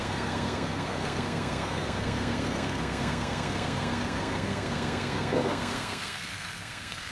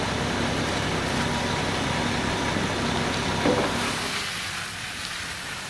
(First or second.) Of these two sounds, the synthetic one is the first